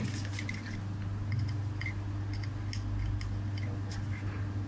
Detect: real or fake real